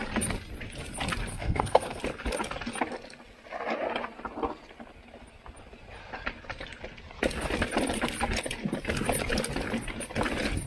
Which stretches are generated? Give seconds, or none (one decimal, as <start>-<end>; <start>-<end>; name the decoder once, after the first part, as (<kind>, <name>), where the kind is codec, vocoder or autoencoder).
1.3-2.0 (codec, SNAC)